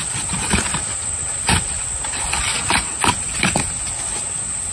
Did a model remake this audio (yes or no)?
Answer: no